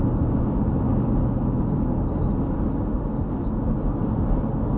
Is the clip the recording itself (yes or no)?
yes